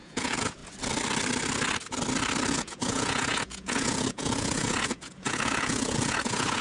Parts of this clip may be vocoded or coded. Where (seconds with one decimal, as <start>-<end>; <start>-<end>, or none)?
0.0-0.6; 2.5-6.6